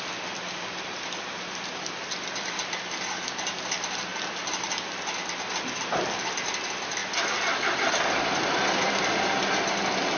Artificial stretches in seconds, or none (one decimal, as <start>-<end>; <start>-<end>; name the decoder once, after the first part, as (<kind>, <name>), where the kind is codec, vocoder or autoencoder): none